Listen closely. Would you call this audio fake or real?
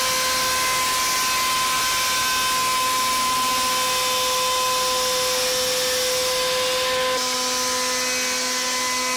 real